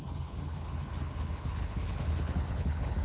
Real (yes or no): no